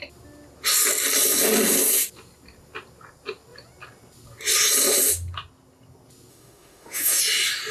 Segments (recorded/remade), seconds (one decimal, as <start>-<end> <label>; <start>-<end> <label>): 0.0-6.3 recorded; 6.3-7.2 remade; 7.2-7.7 recorded